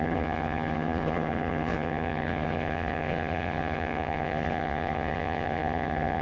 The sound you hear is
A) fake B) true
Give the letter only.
A